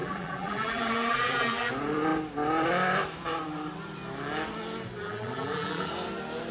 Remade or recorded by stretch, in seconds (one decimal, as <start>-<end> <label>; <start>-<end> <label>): 0.0-1.7 remade; 1.7-5.0 recorded; 5.0-5.9 remade; 5.9-6.5 recorded